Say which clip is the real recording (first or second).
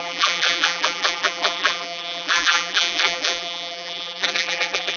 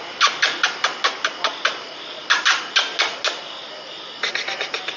second